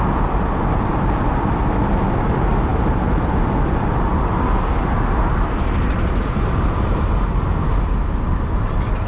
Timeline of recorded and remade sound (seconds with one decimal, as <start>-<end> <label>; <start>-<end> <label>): 0.0-9.1 recorded